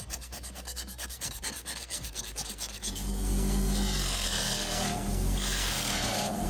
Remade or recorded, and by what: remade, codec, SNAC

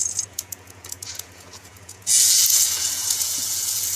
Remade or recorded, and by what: remade, vocoder, Vocos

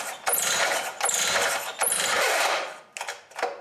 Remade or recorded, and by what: recorded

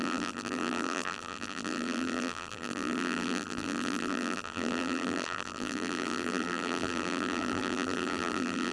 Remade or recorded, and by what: remade, vocoder, BigVGAN v2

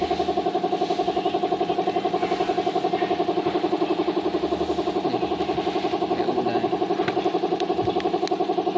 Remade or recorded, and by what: recorded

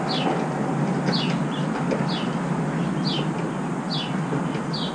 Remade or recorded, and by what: recorded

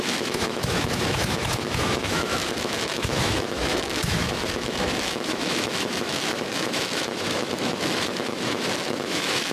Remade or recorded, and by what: remade, autoencoder, DAC-VAE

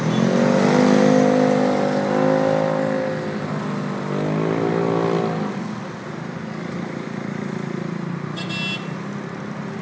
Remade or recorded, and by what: recorded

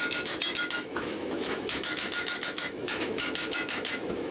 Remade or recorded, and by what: remade, autoencoder, DAC-VAE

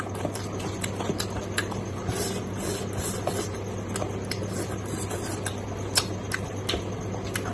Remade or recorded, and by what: recorded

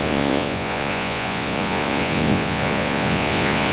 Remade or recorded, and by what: remade, vocoder, Vocos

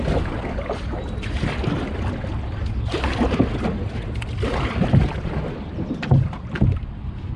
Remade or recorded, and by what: recorded